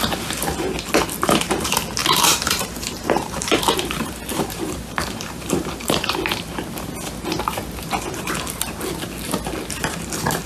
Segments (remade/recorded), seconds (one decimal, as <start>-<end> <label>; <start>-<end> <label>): 0.0-2.0 recorded; 2.0-3.6 remade; 3.6-4.3 recorded; 4.3-6.2 remade; 6.2-10.5 recorded